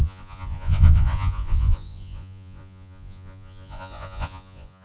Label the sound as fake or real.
fake